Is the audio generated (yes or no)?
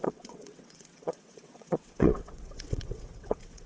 yes